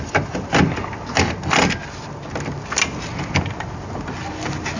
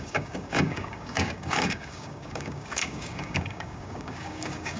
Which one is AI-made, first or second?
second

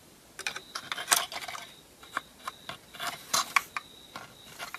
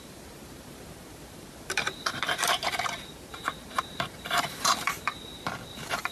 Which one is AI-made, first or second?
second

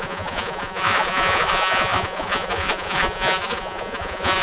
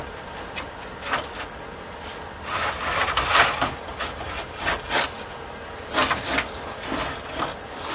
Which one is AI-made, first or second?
first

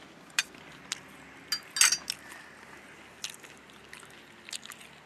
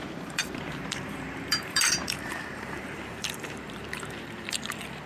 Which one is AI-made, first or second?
second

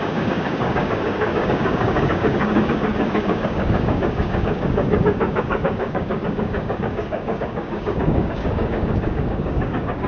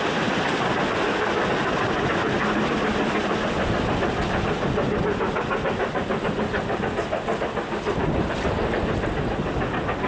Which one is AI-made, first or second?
first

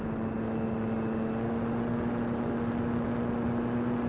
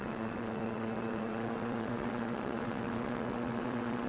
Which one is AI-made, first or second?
second